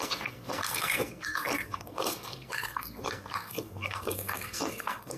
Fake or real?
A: fake